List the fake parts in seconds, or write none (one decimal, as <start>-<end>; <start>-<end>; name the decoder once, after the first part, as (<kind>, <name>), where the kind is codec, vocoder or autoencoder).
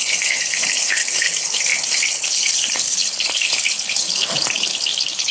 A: 0.0-5.3 (codec, HILCodec)